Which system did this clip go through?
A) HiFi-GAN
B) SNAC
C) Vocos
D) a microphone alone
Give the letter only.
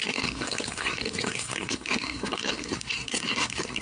B